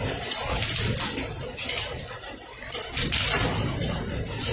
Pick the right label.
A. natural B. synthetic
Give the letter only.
A